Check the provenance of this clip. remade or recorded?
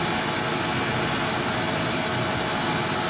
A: recorded